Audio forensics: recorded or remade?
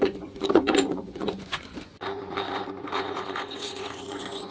remade